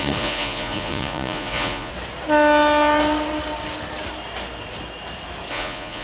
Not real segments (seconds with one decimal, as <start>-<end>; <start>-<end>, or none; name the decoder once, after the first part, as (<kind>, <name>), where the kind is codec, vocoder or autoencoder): 0.0-1.9 (vocoder, Vocos); 5.5-6.0

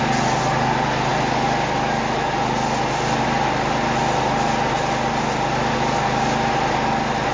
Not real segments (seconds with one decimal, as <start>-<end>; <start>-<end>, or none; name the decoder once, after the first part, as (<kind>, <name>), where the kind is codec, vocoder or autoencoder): none

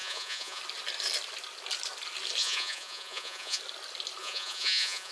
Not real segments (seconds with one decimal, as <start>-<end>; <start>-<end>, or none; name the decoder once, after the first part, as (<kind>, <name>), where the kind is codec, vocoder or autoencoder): 0.0-0.6 (vocoder, Vocos); 2.4-3.6; 4.2-5.1